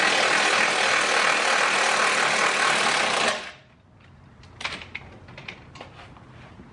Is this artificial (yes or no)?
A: no